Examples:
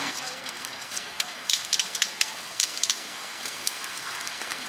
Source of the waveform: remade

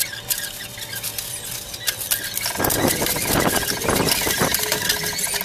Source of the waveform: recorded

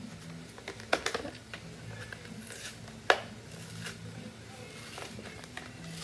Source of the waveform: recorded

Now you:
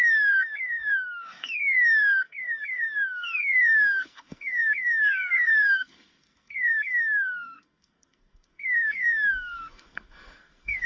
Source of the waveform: remade